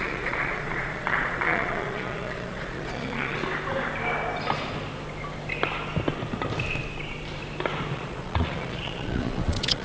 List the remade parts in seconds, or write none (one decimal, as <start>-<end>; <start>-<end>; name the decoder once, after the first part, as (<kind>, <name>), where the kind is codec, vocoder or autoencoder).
0.0-3.4 (vocoder, Vocos); 7.9-9.8